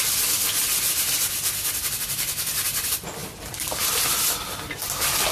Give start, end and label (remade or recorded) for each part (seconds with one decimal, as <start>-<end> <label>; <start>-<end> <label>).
0.0-5.3 recorded